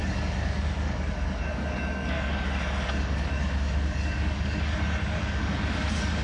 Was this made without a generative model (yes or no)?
no